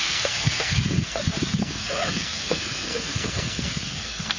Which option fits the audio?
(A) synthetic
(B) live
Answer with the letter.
A